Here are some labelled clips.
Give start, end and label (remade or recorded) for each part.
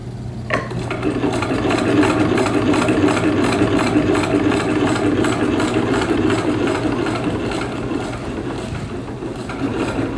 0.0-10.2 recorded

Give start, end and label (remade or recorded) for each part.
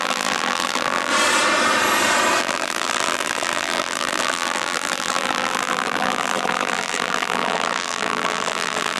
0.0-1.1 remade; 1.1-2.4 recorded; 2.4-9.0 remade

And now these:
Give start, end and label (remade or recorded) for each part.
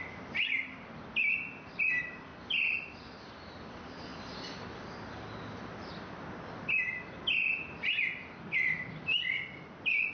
0.0-2.3 remade; 2.3-2.9 recorded; 2.9-4.1 remade; 4.1-8.4 recorded; 8.4-10.1 remade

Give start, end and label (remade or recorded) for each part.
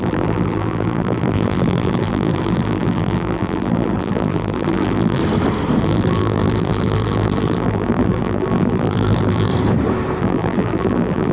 0.0-5.2 remade; 5.2-5.8 recorded; 5.8-9.5 remade; 9.5-10.2 recorded; 10.2-11.3 remade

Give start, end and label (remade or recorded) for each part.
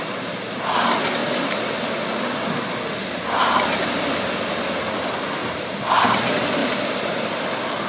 0.0-5.4 recorded; 5.4-5.9 remade; 5.9-6.6 recorded; 6.6-7.2 remade; 7.2-7.9 recorded